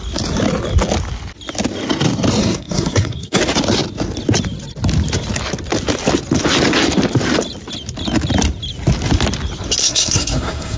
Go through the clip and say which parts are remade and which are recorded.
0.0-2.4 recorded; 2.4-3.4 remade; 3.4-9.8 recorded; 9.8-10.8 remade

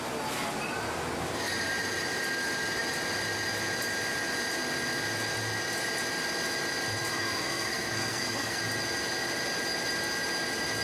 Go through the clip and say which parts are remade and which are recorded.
0.0-7.1 recorded; 7.1-8.6 remade; 8.6-10.8 recorded

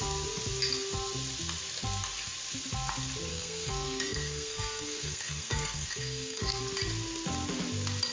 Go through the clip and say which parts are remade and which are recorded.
0.0-3.3 recorded; 3.3-6.6 remade; 6.6-8.1 recorded

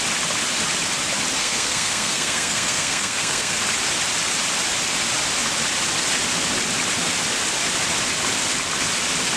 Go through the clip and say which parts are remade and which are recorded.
0.0-1.4 recorded; 1.4-3.6 remade; 3.6-9.4 recorded

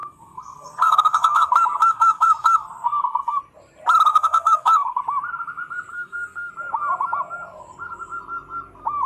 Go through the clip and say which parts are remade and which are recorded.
0.0-3.4 remade; 3.4-4.1 recorded; 4.1-5.0 remade; 5.0-5.9 recorded; 5.9-6.5 remade; 6.5-9.1 recorded

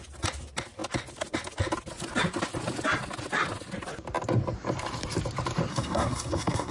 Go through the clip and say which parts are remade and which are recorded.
0.0-5.7 recorded; 5.7-6.7 remade

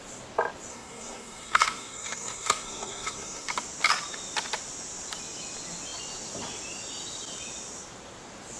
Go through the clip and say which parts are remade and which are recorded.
0.0-0.7 recorded; 0.7-3.5 remade; 3.5-8.6 recorded

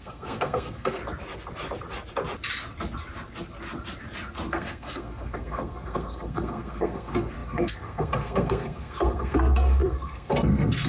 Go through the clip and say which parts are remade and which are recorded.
0.0-1.0 remade; 1.0-4.5 recorded; 4.5-10.9 remade